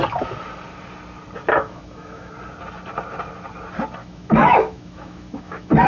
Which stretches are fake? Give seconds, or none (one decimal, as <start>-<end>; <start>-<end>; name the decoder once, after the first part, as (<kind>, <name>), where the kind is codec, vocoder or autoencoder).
1.5-2.3 (autoencoder, DAC-VAE); 4.0-5.9

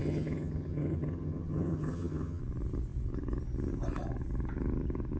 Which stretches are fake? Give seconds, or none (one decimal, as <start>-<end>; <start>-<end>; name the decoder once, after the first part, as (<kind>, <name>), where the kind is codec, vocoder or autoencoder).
0.0-2.4 (vocoder, HiFi-GAN)

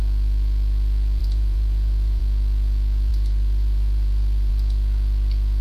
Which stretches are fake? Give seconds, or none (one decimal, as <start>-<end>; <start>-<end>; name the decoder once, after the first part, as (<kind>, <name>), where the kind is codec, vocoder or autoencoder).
1.2-2.2 (vocoder, BigVGAN v2); 3.1-4.5

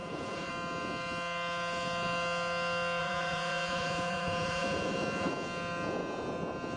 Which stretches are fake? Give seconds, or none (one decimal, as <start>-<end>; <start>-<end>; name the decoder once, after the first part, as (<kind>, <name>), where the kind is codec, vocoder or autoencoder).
0.0-0.5 (vocoder, Vocos); 3.0-5.3